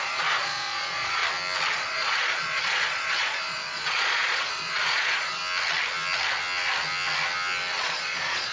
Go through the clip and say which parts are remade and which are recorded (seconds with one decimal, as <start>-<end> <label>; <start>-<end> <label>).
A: 0.0-1.2 remade; 1.2-1.7 recorded; 1.7-5.4 remade; 5.4-7.8 recorded; 7.8-8.5 remade